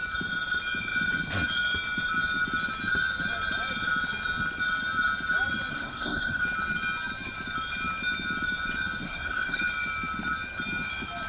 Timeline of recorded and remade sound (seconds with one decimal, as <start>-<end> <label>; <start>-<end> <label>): 0.0-5.7 recorded; 5.7-6.4 remade; 6.4-9.0 recorded; 9.0-9.6 remade; 9.6-11.3 recorded